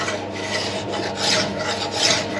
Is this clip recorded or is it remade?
recorded